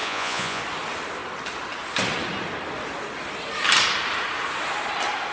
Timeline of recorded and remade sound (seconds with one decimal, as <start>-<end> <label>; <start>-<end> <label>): 0.0-0.6 remade; 0.6-5.3 recorded

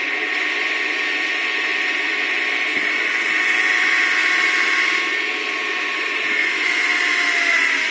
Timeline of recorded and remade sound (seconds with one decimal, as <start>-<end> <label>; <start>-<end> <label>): 0.0-4.2 remade; 4.2-5.7 recorded; 5.7-6.9 remade; 6.9-7.5 recorded; 7.5-7.9 remade

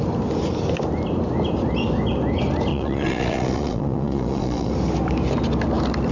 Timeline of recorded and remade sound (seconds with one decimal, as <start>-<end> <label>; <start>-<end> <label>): 0.0-2.7 recorded; 2.7-4.7 remade; 4.7-6.1 recorded